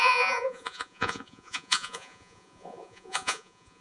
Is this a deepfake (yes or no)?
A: yes